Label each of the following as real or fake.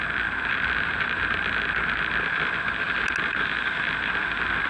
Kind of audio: real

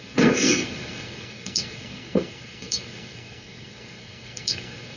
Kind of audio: fake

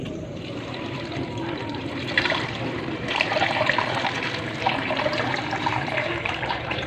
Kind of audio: fake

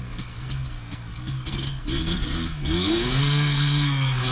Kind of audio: fake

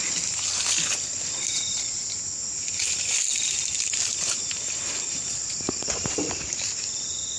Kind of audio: real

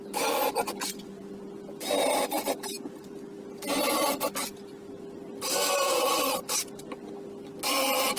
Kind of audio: real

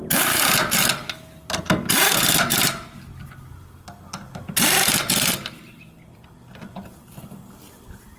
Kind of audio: real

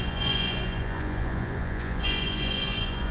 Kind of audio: fake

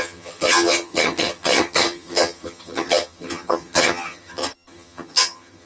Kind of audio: fake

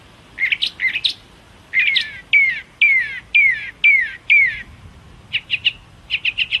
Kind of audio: real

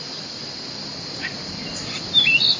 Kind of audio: real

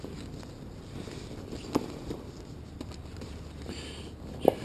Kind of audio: real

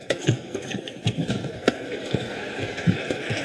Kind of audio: fake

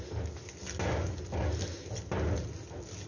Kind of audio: real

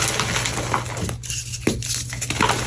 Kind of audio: real